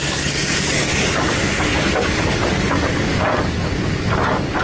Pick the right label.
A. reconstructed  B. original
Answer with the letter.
A